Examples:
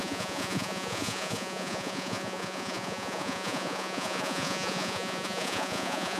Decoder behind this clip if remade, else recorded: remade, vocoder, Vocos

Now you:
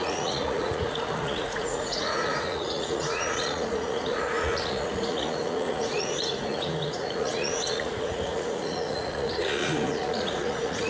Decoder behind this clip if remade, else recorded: remade, vocoder, Vocos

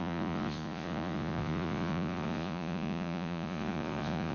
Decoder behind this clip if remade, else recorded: remade, vocoder, Vocos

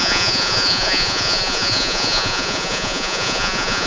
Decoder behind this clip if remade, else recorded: remade, vocoder, Vocos